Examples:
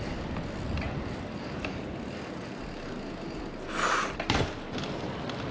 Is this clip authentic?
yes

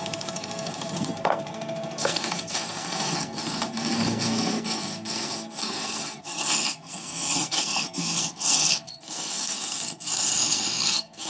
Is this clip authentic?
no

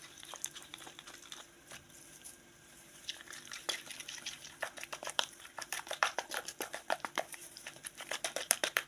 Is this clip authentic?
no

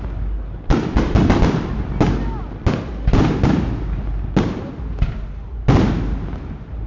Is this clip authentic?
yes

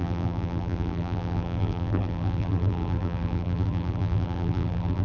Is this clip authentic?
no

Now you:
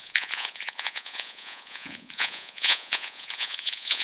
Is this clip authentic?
no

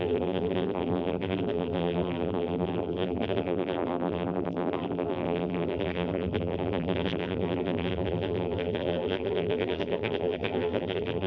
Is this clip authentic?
no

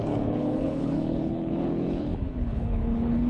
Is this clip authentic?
no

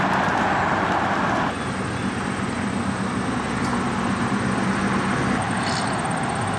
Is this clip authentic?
yes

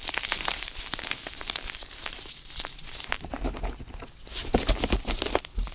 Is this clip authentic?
no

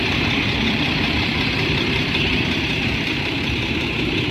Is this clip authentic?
no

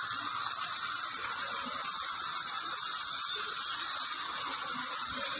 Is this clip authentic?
yes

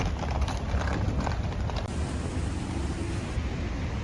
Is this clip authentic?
yes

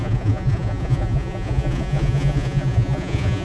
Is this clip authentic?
no